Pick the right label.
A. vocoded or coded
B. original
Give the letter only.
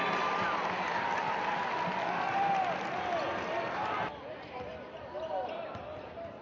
B